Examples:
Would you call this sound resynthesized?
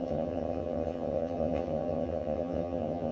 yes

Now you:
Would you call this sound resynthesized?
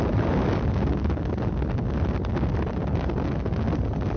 no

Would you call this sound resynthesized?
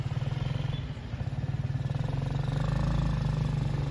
no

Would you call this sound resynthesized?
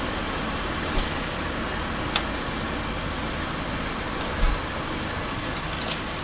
no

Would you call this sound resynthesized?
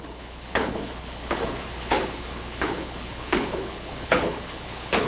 yes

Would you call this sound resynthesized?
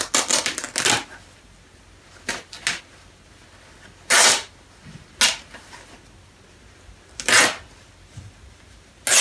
no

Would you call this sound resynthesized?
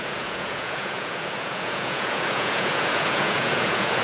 yes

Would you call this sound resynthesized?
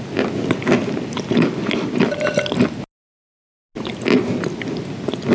no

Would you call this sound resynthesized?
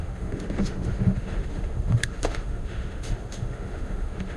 yes